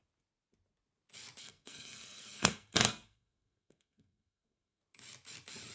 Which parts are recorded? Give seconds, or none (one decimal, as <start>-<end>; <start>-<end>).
0.0-1.4; 4.8-5.7